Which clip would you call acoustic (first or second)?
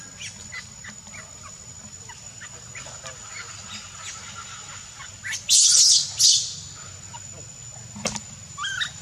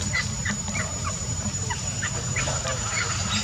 first